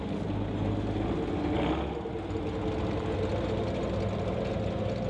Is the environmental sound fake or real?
real